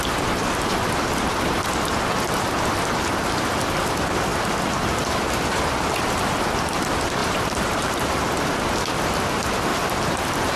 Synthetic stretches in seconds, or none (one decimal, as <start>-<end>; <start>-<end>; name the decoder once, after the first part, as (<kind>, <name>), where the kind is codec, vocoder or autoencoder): 7.2-8.2 (vocoder, BigVGAN v2); 9.7-10.6